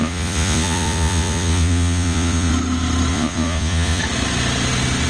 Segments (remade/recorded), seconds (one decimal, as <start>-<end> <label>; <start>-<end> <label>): 0.0-2.5 remade; 2.5-3.1 recorded; 3.1-4.0 remade; 4.0-5.1 recorded